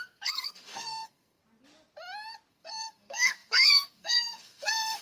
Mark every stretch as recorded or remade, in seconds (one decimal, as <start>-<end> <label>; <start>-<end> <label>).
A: 0.0-1.4 remade; 1.4-2.5 recorded; 2.5-5.0 remade